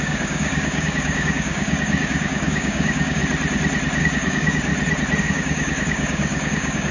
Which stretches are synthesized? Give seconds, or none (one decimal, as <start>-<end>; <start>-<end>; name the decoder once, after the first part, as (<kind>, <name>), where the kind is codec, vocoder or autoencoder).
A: 0.0-3.2 (codec, DAC); 4.0-4.7; 5.2-6.9